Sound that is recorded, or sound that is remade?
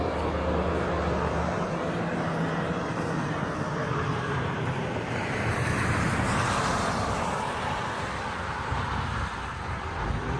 remade